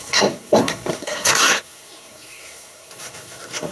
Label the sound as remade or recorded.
remade